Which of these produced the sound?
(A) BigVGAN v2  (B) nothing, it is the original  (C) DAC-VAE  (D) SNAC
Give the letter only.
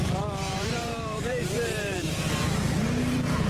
A